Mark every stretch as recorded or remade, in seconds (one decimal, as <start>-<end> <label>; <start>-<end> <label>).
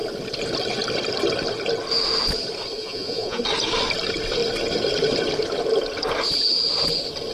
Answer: 0.0-2.8 recorded; 2.8-3.4 remade; 3.4-7.3 recorded